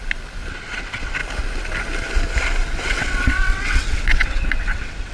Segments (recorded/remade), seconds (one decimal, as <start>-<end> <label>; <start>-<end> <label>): 0.0-0.5 recorded; 0.5-1.2 remade; 1.2-2.8 recorded; 2.8-5.1 remade